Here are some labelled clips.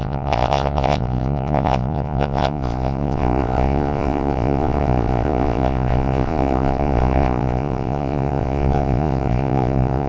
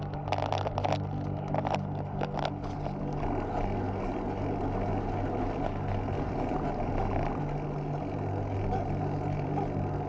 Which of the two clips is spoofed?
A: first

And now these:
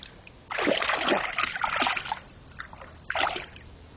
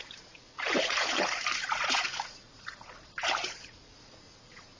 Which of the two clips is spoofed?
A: second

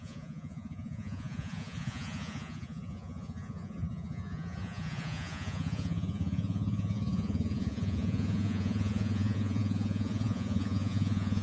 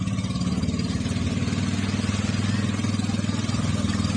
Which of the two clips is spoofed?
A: first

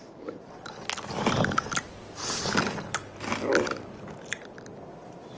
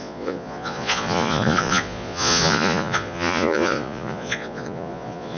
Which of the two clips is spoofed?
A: second